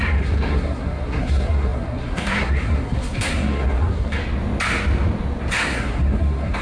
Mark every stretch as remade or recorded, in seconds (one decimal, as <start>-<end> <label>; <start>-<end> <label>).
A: 0.0-4.2 remade; 4.2-5.5 recorded; 5.5-6.6 remade